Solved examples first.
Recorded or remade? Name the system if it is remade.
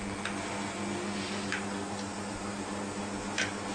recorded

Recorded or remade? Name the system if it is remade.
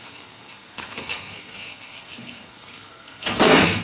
remade, codec, SNAC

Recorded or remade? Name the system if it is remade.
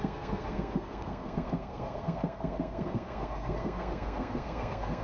remade, codec, SNAC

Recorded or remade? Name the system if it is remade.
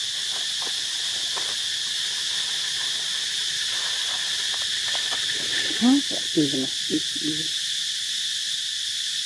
recorded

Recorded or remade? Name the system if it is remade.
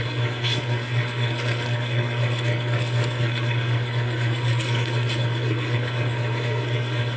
remade, codec, SNAC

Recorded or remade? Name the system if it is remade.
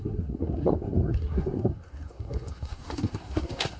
remade, codec, SNAC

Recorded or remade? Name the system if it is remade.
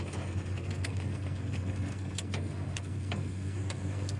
remade, codec, SNAC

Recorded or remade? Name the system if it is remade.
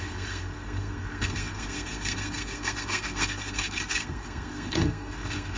remade, codec, SNAC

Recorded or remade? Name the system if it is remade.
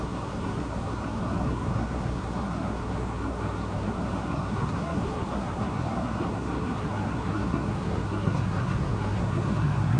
remade, codec, SNAC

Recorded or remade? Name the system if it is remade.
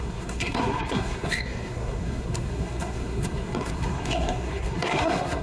remade, codec, SNAC